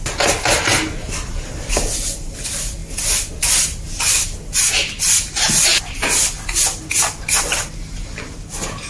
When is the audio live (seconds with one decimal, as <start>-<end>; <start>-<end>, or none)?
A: 0.0-8.9